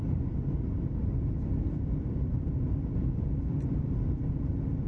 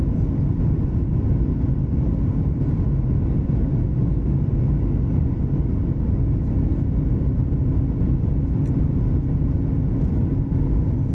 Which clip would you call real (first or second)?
second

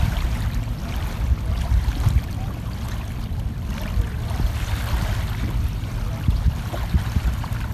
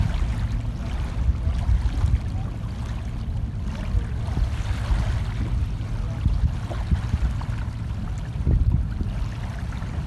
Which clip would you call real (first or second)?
second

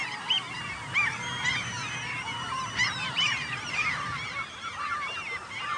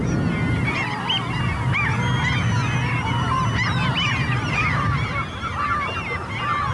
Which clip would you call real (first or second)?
second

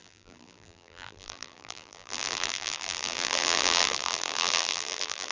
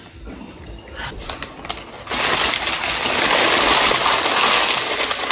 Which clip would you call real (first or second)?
second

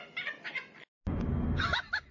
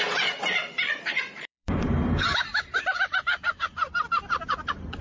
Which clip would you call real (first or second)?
first